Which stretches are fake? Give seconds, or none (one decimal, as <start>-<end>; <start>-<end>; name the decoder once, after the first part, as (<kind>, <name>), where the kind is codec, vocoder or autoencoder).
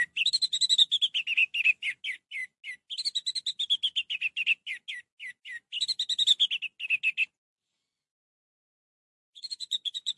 8.1-10.2 (vocoder, Vocos)